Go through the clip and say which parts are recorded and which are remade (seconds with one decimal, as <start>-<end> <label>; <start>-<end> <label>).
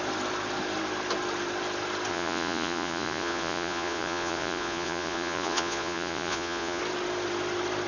0.0-2.1 recorded; 2.1-6.8 remade; 6.8-7.9 recorded